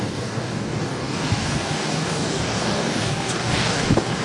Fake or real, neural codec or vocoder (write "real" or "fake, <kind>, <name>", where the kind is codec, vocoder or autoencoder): fake, codec, DAC